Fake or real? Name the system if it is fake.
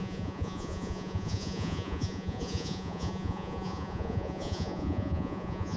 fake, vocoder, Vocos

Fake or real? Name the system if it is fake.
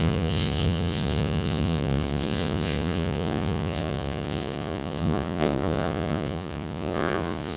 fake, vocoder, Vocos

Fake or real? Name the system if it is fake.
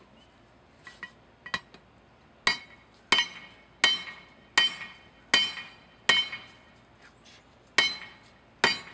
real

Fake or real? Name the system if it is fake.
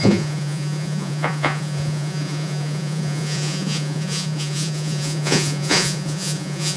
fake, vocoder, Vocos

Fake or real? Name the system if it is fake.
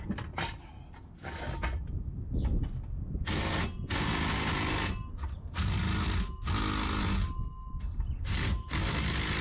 real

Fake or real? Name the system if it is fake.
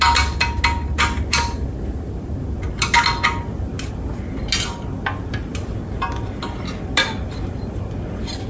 real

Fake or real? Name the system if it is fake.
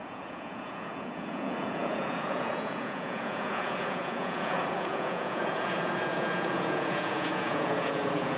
fake, vocoder, Vocos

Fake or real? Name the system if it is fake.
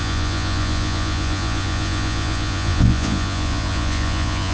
fake, vocoder, Vocos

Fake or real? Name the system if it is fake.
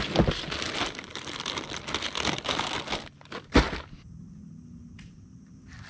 real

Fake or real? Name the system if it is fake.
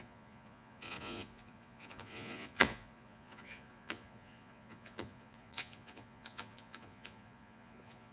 fake, vocoder, Vocos